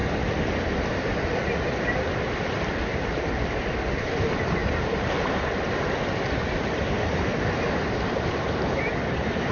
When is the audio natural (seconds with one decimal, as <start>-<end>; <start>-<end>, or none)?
4.6-6.3